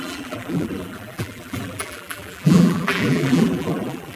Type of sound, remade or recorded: remade